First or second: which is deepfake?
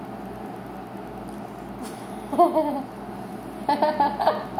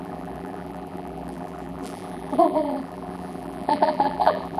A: second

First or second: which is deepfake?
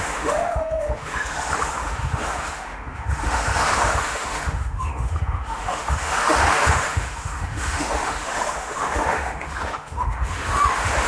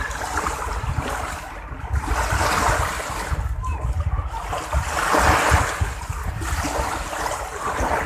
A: first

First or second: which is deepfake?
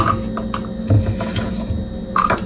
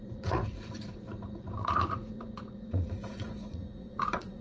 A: second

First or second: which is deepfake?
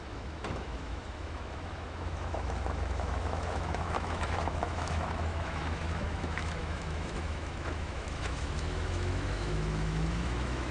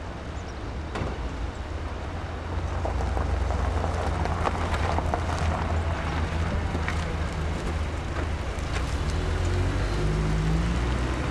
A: first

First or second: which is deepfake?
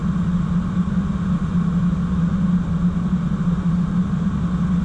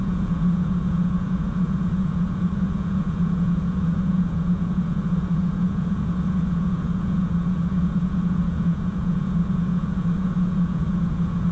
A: second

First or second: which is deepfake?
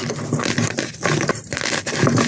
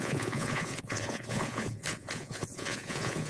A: second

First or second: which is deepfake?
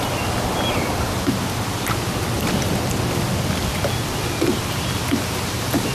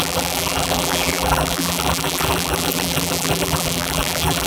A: second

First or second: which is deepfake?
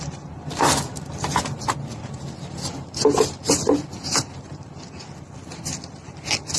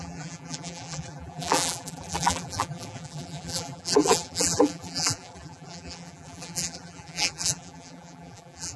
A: second